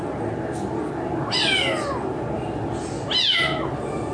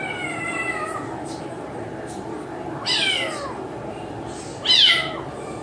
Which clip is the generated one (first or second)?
second